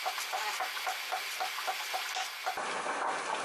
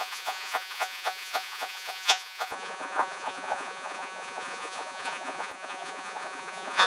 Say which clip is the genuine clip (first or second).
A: first